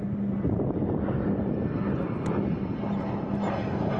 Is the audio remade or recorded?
recorded